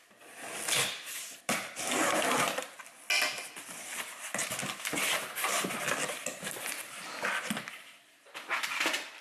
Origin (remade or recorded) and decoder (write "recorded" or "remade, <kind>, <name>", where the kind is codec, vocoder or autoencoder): recorded